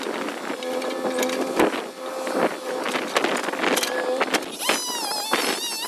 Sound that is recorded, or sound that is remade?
recorded